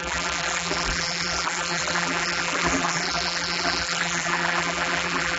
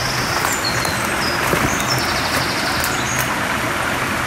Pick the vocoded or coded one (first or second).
first